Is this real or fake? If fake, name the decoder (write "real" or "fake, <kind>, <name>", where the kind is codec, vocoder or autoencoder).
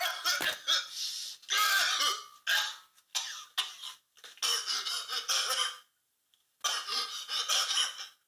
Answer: real